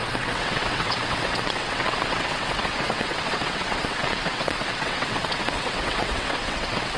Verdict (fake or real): fake